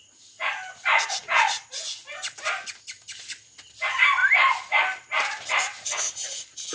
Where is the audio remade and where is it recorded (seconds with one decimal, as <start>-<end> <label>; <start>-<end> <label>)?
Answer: 0.0-6.7 recorded